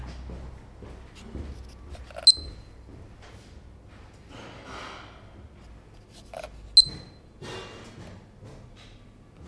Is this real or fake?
real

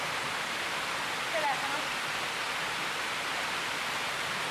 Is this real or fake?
real